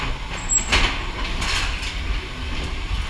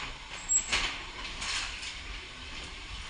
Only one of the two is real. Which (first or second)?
first